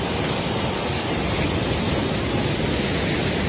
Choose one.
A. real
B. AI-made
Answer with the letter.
A